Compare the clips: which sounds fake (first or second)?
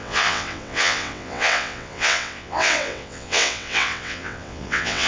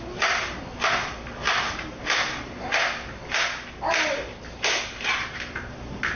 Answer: first